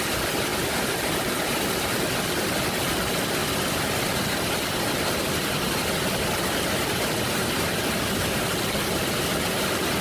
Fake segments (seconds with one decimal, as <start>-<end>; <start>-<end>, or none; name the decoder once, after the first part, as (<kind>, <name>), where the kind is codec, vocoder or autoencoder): none